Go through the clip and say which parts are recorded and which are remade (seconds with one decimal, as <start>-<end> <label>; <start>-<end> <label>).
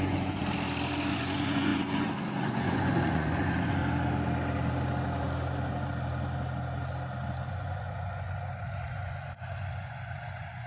0.0-0.4 remade; 0.4-1.1 recorded; 1.1-3.8 remade; 3.8-7.5 recorded; 7.5-10.7 remade